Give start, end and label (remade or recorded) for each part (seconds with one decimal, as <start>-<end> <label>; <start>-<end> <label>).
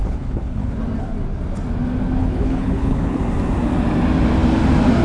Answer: 0.0-0.8 remade; 0.8-2.2 recorded; 2.2-3.2 remade; 3.2-5.0 recorded